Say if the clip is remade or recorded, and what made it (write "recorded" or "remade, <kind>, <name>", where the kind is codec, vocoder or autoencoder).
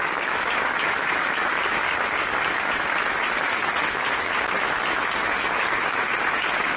remade, autoencoder, DAC-VAE